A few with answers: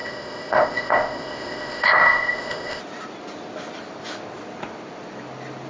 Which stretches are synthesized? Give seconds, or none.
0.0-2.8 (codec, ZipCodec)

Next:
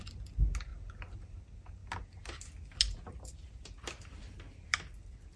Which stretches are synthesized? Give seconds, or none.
none

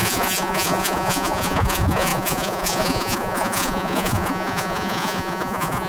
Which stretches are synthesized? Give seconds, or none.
0.0-5.9 (vocoder, Vocos)

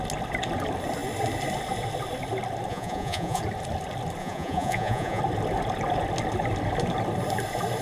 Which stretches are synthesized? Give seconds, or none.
2.7-3.4 (vocoder, Vocos); 4.2-5.2

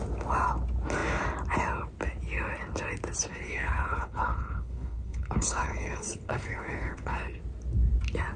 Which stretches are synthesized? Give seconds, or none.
3.3-7.4 (codec, HILCodec)